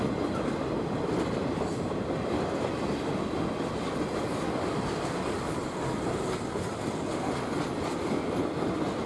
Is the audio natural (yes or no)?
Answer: yes